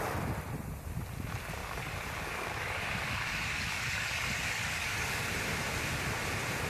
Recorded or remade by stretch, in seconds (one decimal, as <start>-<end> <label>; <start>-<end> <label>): 0.0-1.6 recorded; 1.6-5.2 remade; 5.2-6.7 recorded